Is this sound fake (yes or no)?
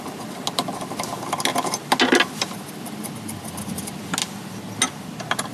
no